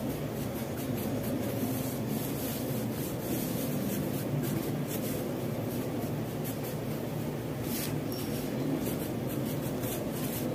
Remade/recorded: remade